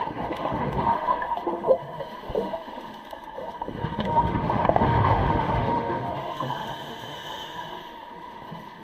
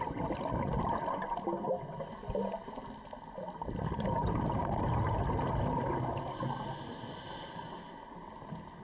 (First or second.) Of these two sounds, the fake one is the first